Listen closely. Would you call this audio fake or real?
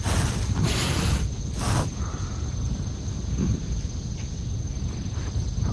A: real